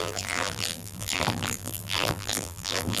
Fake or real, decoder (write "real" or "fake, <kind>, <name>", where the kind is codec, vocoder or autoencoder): fake, vocoder, BigVGAN v2